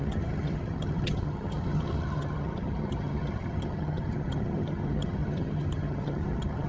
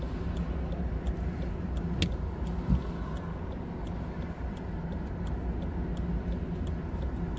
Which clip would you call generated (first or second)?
first